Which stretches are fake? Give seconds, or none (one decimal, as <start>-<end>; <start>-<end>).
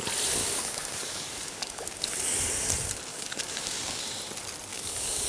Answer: 0.4-2.4; 3.1-4.0; 4.7-5.3